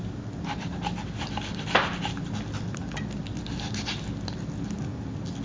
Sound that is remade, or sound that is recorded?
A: recorded